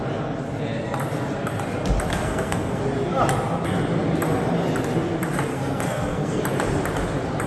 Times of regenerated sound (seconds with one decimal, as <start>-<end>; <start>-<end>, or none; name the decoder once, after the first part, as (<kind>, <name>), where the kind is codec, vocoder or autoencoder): 2.1-2.8 (codec, SNAC); 5.5-6.4